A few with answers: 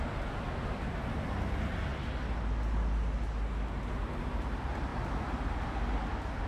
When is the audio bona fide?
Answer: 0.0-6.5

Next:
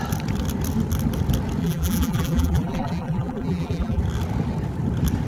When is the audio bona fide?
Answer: 0.0-1.6; 4.0-5.3

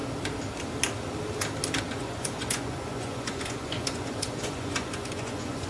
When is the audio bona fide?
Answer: 0.0-1.8

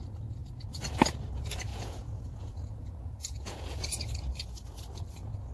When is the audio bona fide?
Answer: 0.0-1.7; 4.3-5.5

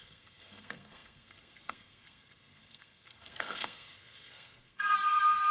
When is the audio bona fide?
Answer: none

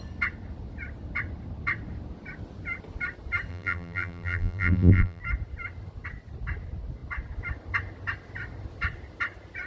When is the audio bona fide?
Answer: 0.0-3.5; 5.2-9.7

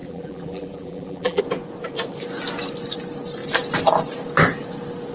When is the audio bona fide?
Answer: 1.4-5.1

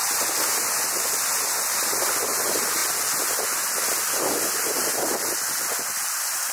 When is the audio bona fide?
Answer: 0.0-6.5